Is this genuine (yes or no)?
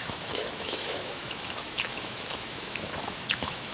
no